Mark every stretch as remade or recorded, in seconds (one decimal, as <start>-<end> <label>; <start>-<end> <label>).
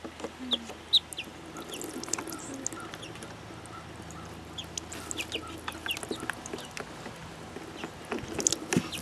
0.0-9.0 recorded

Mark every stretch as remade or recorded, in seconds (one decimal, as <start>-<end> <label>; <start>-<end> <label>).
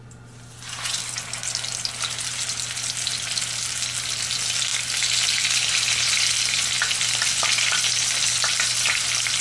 0.0-9.4 recorded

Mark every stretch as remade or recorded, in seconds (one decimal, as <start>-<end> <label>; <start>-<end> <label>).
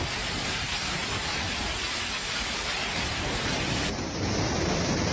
0.0-1.0 recorded; 1.0-4.1 remade; 4.1-5.1 recorded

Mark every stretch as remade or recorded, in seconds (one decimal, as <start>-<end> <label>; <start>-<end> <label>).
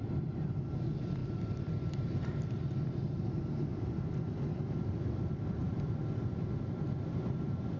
0.0-1.2 recorded; 1.2-5.9 remade; 5.9-7.8 recorded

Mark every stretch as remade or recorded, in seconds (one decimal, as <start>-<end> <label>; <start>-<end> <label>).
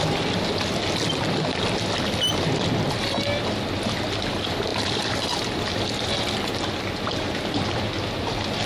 0.0-4.7 recorded; 4.7-5.4 remade; 5.4-8.7 recorded